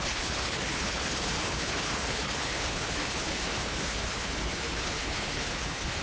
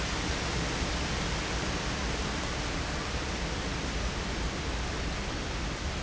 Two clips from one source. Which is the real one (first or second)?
second